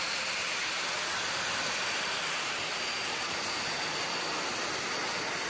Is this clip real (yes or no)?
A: yes